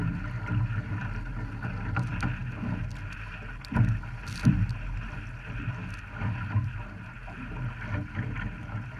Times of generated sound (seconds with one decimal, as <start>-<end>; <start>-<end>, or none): none